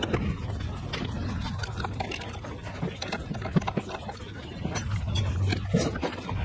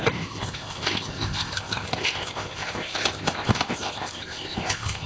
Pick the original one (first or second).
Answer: first